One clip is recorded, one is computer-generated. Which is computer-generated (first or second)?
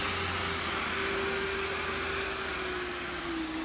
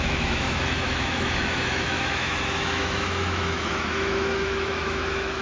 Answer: second